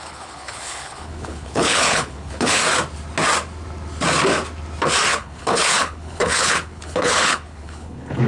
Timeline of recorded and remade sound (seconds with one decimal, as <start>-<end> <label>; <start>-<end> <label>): 0.0-2.6 remade; 2.6-5.1 recorded; 5.1-8.3 remade